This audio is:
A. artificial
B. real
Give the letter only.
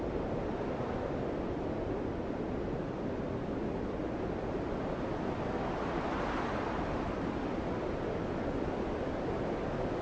B